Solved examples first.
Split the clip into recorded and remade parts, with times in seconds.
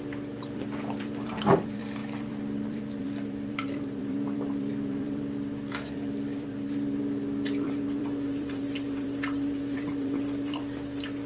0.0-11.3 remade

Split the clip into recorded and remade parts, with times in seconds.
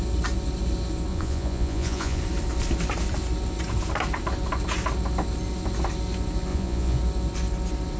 0.0-1.1 recorded; 1.1-2.2 remade; 2.2-6.5 recorded; 6.5-7.0 remade; 7.0-8.0 recorded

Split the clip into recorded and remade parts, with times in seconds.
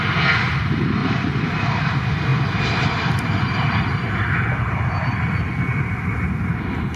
0.0-1.0 recorded; 1.0-1.8 remade; 1.8-7.0 recorded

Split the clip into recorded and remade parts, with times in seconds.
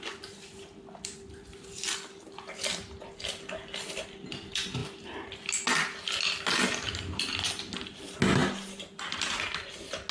0.0-10.1 recorded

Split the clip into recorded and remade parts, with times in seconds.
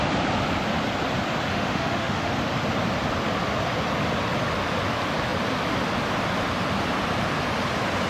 0.0-1.5 recorded; 1.5-2.3 remade; 2.3-8.1 recorded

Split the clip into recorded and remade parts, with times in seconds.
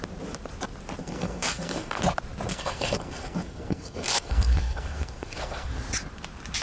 0.0-1.0 recorded; 1.0-2.0 remade; 2.0-2.5 recorded; 2.5-5.7 remade; 5.7-6.6 recorded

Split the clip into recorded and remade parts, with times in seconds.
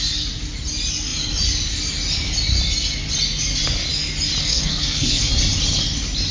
0.0-4.4 recorded; 4.4-5.3 remade; 5.3-6.3 recorded